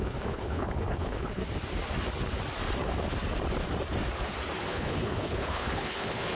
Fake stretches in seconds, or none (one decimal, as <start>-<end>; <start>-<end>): 0.0-1.4; 4.7-6.4